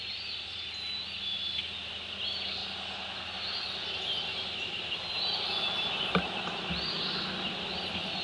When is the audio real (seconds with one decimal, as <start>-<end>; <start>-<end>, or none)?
0.0-8.2